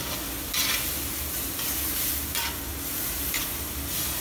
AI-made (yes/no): no